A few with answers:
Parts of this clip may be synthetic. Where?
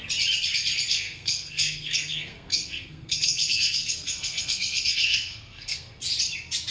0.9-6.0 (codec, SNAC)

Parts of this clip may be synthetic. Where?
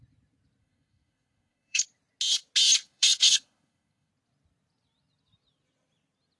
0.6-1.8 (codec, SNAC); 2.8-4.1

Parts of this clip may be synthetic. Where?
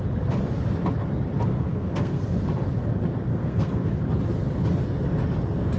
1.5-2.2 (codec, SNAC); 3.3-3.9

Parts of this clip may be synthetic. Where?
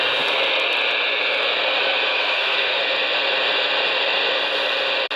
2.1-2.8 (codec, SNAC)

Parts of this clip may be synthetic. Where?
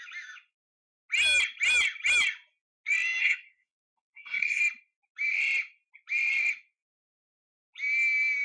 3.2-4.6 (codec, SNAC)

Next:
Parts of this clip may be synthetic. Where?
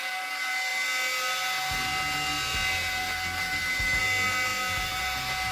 none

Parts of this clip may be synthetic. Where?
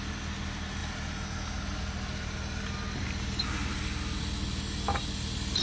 none